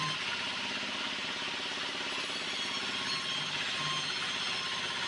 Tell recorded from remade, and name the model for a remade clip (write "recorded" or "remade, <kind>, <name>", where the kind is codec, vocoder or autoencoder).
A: recorded